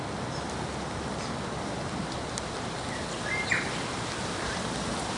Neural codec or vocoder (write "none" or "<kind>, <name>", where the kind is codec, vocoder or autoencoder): none